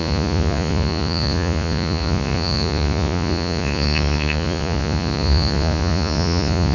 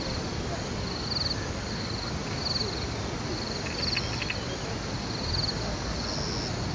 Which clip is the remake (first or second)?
first